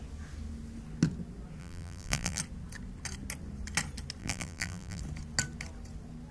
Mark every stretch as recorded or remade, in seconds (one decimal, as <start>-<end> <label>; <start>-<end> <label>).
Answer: 0.0-1.6 recorded; 1.6-2.4 remade; 2.4-4.2 recorded; 4.2-5.0 remade; 5.0-6.3 recorded